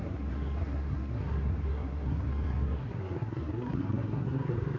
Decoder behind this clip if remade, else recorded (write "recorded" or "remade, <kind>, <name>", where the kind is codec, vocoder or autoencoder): remade, codec, SNAC